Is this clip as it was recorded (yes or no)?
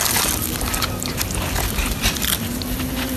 yes